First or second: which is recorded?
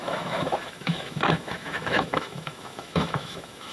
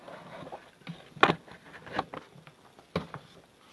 second